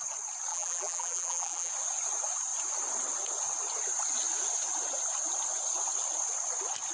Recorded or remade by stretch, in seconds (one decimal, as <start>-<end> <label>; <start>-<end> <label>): 0.0-0.5 recorded; 0.5-1.7 remade; 1.7-6.9 recorded